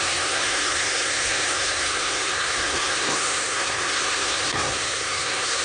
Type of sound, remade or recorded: remade